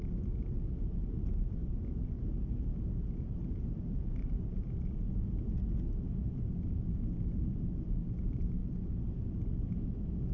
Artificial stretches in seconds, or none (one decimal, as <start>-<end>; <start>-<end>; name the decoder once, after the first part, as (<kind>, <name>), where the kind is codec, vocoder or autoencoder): none